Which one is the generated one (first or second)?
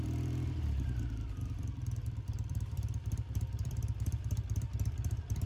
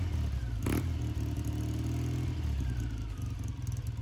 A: first